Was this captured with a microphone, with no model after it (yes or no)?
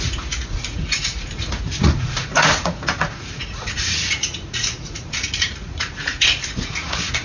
no